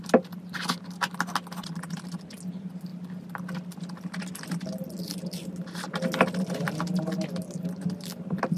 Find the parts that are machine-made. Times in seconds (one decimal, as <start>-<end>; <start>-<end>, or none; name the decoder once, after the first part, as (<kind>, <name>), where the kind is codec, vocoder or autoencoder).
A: none